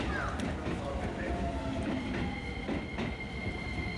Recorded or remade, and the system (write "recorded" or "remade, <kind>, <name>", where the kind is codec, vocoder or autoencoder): remade, vocoder, BigVGAN v2